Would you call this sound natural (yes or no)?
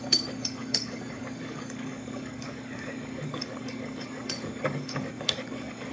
no